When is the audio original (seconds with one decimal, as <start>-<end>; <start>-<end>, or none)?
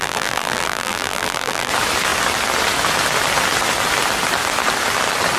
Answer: 1.7-5.4